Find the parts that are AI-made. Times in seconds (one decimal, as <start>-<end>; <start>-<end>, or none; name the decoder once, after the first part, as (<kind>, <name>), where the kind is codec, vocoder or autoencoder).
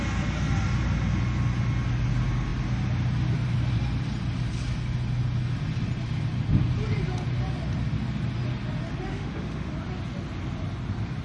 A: 9.1-9.7 (autoencoder, DAC-VAE)